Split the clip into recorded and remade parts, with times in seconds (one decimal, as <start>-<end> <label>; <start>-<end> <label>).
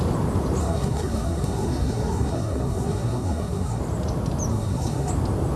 0.0-0.6 recorded; 0.6-3.8 remade; 3.8-4.5 recorded; 4.5-5.1 remade; 5.1-5.6 recorded